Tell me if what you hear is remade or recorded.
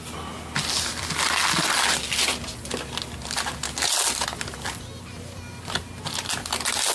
recorded